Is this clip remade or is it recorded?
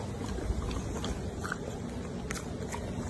recorded